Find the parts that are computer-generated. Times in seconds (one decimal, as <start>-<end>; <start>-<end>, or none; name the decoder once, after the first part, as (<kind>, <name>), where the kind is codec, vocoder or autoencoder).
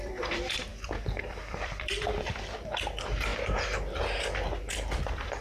0.0-3.3 (vocoder, BigVGAN v2); 4.7-5.4